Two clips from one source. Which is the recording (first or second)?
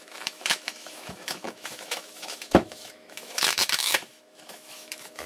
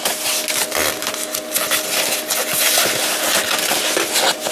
second